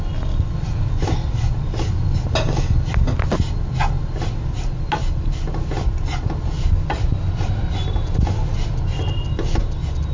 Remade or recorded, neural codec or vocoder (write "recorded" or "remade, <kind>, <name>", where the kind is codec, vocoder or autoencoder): recorded